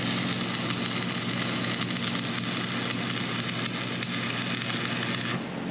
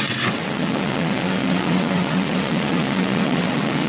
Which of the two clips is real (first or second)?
first